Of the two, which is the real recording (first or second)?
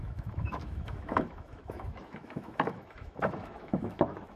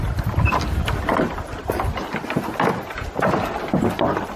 second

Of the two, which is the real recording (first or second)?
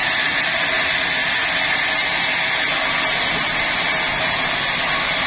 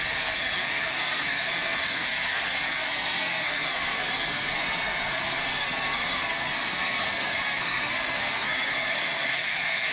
first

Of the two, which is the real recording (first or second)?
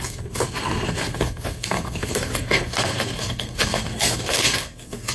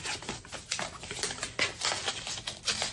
second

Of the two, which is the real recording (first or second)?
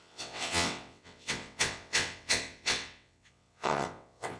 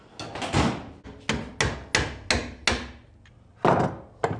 second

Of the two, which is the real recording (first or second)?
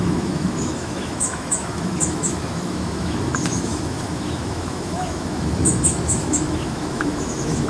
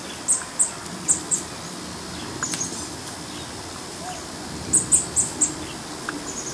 second